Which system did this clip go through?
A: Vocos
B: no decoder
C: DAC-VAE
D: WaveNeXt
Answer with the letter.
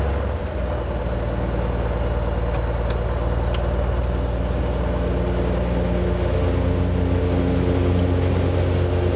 B